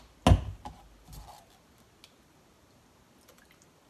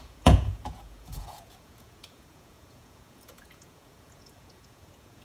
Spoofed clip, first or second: second